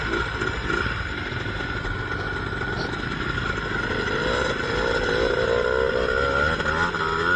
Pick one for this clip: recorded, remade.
recorded